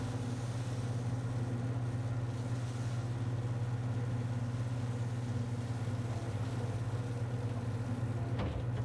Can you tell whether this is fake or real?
real